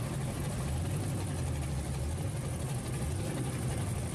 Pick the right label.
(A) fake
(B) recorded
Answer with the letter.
B